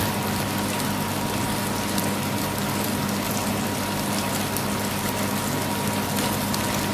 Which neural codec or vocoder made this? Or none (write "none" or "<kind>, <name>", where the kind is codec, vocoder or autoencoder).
none